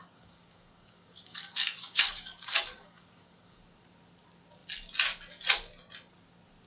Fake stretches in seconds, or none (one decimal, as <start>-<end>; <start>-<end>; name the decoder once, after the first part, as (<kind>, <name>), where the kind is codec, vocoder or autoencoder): 0.0-3.6 (codec, DAC)